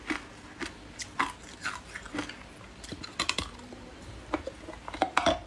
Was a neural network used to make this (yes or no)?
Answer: no